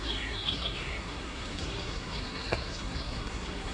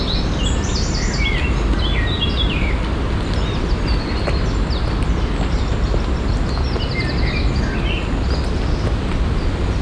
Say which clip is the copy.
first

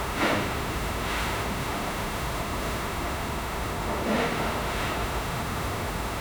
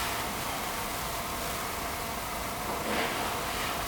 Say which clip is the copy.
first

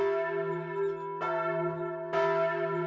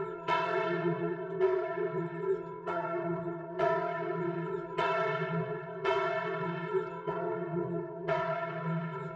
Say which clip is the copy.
second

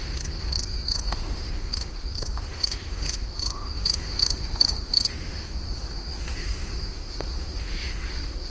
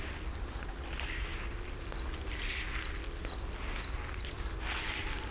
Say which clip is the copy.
first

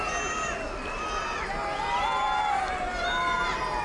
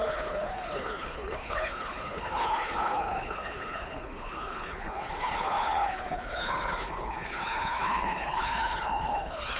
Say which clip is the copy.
second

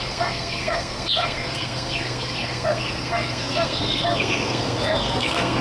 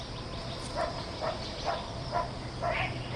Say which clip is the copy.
first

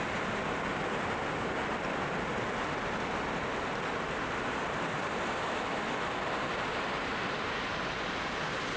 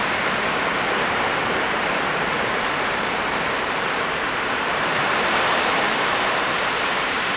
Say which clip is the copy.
second